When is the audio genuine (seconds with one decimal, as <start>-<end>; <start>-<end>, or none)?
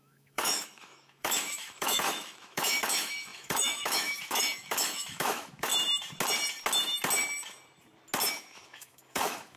5.7-8.3